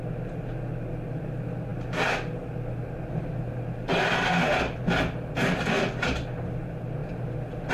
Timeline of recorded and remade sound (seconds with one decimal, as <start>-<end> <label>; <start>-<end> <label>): 0.0-7.7 recorded